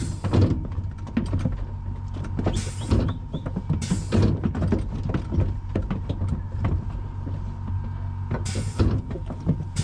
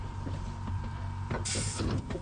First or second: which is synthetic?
second